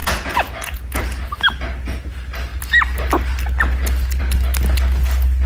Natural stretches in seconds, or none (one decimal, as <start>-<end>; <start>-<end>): 1.0-5.5